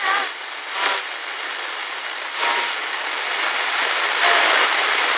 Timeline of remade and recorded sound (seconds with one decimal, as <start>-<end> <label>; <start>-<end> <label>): 0.0-2.8 remade; 2.8-3.5 recorded; 3.5-5.2 remade